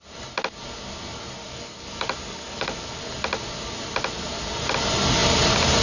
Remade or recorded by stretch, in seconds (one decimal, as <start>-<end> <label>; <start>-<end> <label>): 0.0-1.4 recorded; 1.4-3.0 remade; 3.0-5.8 recorded